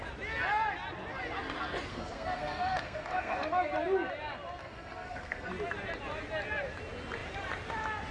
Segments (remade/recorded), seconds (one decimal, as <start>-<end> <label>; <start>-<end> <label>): 0.0-1.9 recorded; 1.9-3.7 remade; 3.7-4.6 recorded; 4.6-5.5 remade; 5.5-8.1 recorded